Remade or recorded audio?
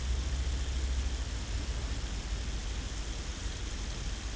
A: recorded